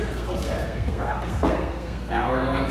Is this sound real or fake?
fake